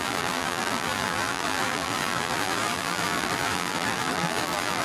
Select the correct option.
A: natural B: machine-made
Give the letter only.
B